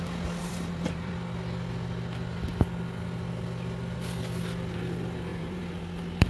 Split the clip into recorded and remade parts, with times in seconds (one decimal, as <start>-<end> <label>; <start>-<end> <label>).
0.0-0.4 recorded; 0.4-1.1 remade; 1.1-5.3 recorded; 5.3-5.8 remade; 5.8-6.3 recorded